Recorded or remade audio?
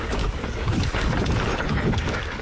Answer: remade